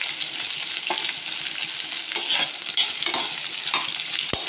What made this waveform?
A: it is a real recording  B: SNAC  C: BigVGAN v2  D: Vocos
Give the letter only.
A